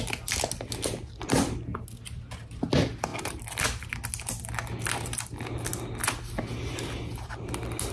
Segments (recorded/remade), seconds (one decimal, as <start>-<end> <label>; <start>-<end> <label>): 0.0-7.9 recorded